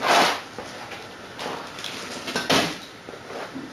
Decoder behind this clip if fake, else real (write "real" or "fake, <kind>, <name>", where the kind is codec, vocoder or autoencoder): real